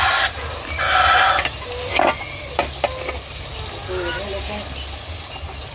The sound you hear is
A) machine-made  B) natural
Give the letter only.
B